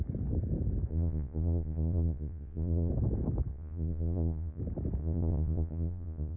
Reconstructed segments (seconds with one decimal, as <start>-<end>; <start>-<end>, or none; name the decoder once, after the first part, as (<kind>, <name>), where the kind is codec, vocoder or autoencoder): 0.9-2.9 (vocoder, Vocos); 3.5-4.6; 5.0-6.4